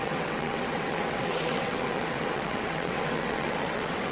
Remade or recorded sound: remade